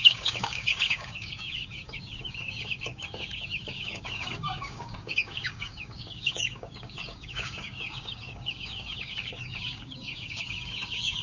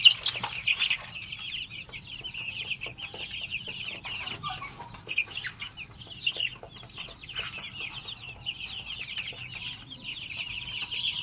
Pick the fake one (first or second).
first